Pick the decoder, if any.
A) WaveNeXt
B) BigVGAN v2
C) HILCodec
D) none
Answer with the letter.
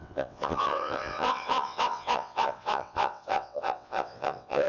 A